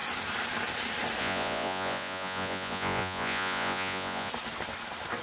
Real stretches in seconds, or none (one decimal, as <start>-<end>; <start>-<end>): 0.0-1.2; 4.3-5.2